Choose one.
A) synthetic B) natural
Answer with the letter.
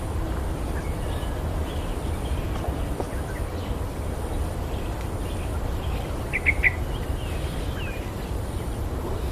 A